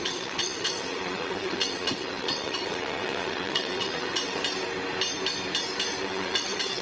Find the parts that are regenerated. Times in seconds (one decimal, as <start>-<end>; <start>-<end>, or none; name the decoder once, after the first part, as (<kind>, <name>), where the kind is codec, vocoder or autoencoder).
0.0-4.4 (vocoder, WaveNeXt); 6.0-6.8